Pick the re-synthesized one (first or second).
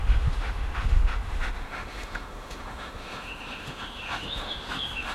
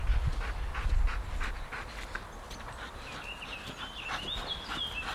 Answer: first